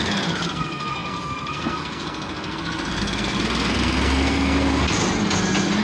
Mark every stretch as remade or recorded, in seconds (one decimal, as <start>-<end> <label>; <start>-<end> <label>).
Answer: 0.0-5.0 remade; 5.0-5.8 recorded